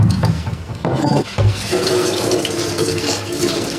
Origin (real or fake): fake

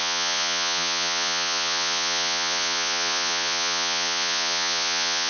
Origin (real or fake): fake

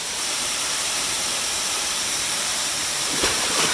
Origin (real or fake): fake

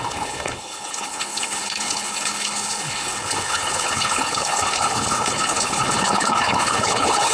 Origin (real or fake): fake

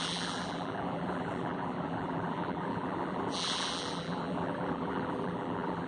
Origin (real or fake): fake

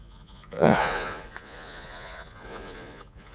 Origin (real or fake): fake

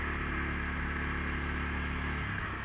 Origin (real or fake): real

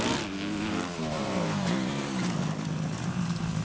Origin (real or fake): real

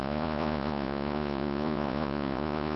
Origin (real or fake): fake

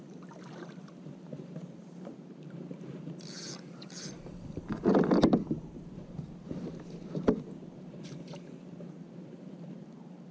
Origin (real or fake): fake